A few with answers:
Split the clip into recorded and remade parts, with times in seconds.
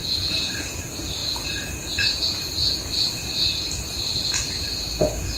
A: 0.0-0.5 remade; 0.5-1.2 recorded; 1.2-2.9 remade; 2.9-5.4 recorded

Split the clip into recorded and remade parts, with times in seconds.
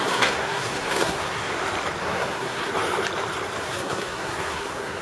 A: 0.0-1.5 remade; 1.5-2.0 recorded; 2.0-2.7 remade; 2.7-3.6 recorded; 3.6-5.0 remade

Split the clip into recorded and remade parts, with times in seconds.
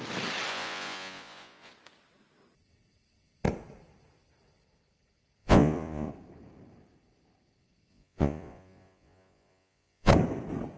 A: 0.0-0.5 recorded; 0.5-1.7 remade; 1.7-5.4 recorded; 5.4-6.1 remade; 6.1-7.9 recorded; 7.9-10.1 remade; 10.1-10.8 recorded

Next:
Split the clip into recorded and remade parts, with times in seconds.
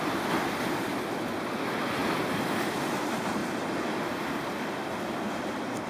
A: 0.0-5.9 recorded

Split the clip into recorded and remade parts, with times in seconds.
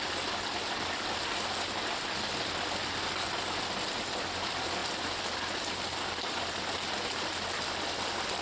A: 0.0-8.4 recorded